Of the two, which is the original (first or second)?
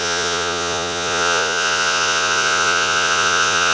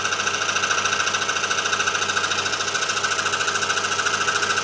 second